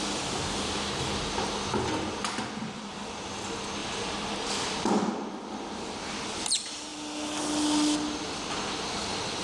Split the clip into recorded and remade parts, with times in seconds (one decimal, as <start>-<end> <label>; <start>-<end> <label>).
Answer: 0.0-3.8 recorded; 3.8-5.1 remade; 5.1-9.4 recorded